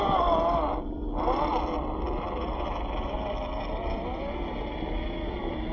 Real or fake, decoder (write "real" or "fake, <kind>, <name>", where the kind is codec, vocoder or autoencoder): real